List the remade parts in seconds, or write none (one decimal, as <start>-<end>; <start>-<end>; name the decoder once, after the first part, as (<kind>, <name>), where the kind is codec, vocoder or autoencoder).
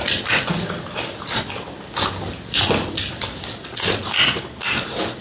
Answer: none